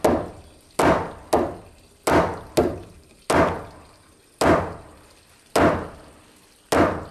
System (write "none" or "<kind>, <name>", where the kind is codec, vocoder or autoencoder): none